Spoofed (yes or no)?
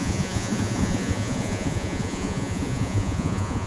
yes